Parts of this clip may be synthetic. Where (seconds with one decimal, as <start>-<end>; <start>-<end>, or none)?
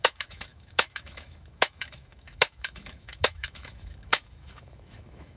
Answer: 0.0-5.4